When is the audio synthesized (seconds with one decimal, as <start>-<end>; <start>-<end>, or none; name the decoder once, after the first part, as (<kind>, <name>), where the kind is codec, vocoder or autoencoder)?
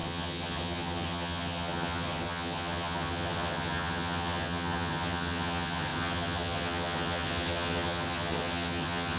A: 0.0-9.2 (vocoder, HiFi-GAN)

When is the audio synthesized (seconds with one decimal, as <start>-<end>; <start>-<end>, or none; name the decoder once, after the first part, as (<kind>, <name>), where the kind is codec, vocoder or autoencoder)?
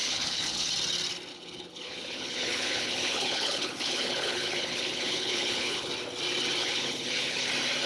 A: 0.0-0.7 (codec, HILCodec); 1.3-5.9; 6.6-7.5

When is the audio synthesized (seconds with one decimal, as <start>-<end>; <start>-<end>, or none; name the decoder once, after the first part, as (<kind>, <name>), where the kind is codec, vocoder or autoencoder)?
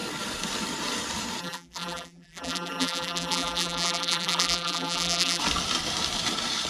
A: 1.4-5.4 (vocoder, BigVGAN v2)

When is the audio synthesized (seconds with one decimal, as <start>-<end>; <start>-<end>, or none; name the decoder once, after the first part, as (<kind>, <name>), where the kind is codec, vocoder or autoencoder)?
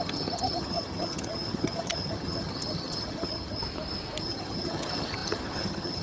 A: 0.0-3.6 (vocoder, HiFi-GAN); 4.2-6.0